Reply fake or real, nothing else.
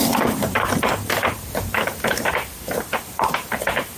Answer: fake